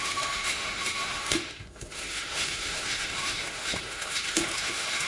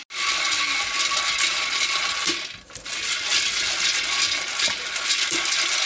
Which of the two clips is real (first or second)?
second